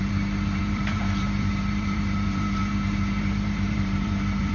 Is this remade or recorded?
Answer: remade